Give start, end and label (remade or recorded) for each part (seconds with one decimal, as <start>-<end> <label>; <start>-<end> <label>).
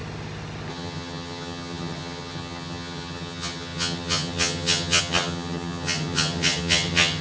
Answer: 0.0-0.7 recorded; 0.7-7.2 remade